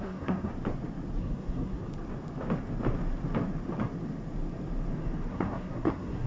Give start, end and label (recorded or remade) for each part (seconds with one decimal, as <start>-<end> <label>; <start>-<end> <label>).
0.0-0.5 remade; 0.5-1.2 recorded; 1.2-1.9 remade; 1.9-5.3 recorded; 5.3-6.3 remade

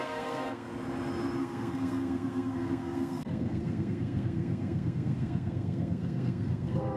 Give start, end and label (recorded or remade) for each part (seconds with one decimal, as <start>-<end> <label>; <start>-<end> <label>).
0.0-0.7 remade; 0.7-1.4 recorded; 1.4-7.0 remade

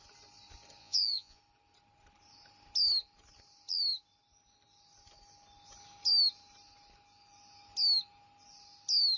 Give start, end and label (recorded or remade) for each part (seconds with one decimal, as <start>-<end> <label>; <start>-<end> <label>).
0.0-0.8 recorded; 0.8-1.4 remade; 1.4-9.2 recorded

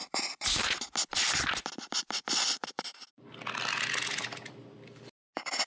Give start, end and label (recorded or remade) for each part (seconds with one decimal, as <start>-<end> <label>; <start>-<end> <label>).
0.0-5.7 recorded

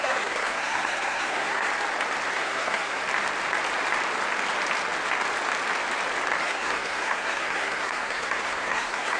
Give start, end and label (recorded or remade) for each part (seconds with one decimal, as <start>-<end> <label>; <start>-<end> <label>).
0.0-1.7 remade; 1.7-2.3 recorded; 2.3-3.0 remade; 3.0-6.4 recorded; 6.4-9.2 remade

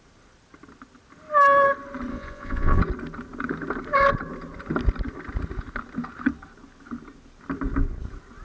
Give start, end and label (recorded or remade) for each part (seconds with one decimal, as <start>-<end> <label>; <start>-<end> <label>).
0.0-2.1 recorded; 2.1-2.8 remade; 2.8-8.4 recorded